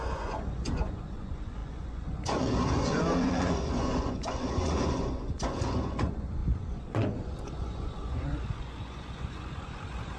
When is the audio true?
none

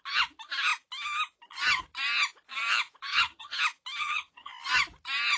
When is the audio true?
0.0-3.1; 3.6-4.0; 4.5-5.4

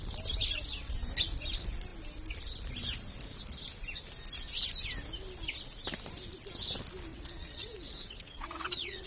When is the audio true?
0.0-7.1

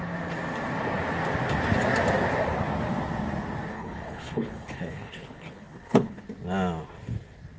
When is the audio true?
0.0-3.7; 6.2-7.6

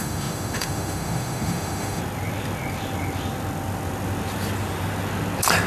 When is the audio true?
2.0-5.7